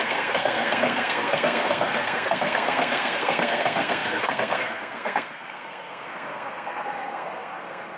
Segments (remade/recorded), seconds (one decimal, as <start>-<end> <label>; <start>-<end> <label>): 0.0-8.0 remade